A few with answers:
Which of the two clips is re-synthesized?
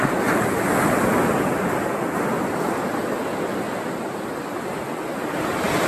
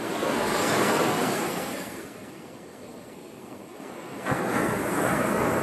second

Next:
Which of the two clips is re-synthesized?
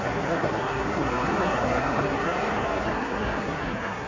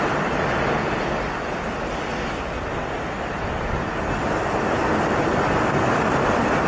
first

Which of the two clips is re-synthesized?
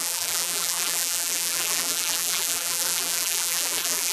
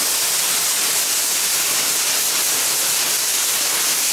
first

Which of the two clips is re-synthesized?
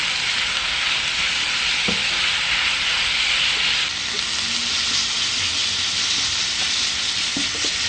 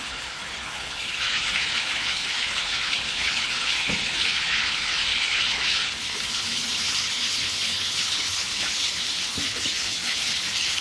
second